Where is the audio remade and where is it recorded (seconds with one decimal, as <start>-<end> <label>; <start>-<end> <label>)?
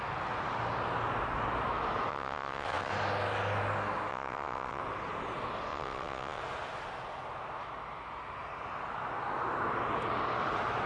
0.0-2.1 recorded; 2.1-2.9 remade; 2.9-4.1 recorded; 4.1-4.8 remade; 4.8-5.7 recorded; 5.7-6.4 remade; 6.4-10.9 recorded